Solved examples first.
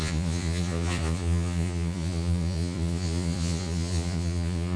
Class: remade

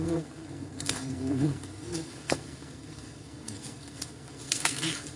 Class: remade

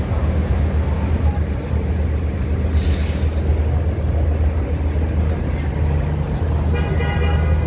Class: recorded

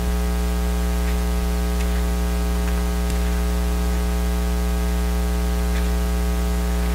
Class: recorded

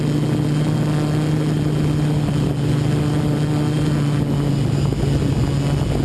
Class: recorded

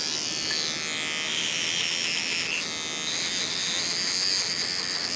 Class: recorded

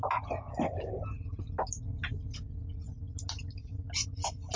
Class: recorded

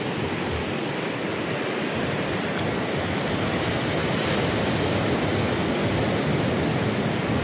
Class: recorded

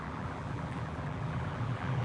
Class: remade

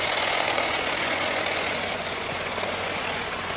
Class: remade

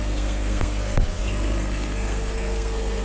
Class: remade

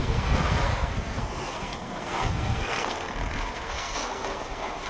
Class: remade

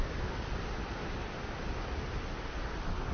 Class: recorded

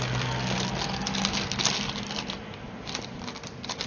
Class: recorded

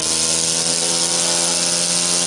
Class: recorded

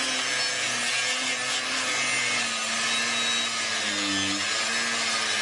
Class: recorded